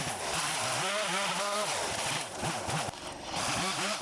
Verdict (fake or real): real